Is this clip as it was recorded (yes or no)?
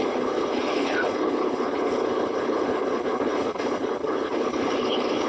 no